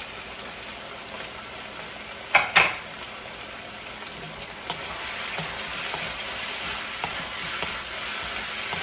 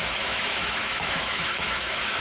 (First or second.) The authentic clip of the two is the first